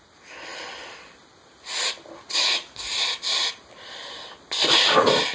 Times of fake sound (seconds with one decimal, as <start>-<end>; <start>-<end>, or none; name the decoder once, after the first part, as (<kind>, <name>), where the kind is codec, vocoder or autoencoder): 0.5-1.6 (vocoder, BigVGAN v2)